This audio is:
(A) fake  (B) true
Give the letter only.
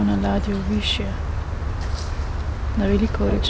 B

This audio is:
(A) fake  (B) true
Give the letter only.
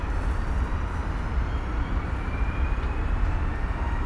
B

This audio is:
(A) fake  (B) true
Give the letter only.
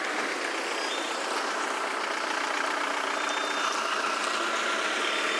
B